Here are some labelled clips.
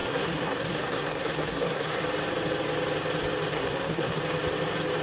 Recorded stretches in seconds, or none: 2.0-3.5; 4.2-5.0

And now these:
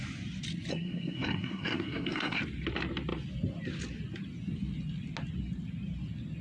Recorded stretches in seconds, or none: 0.0-0.7; 2.4-6.4